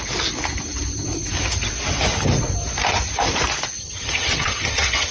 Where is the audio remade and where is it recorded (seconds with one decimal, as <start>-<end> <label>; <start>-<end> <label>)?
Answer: 0.0-3.8 recorded; 3.8-5.1 remade